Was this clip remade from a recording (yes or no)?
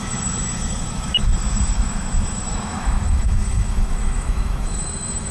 yes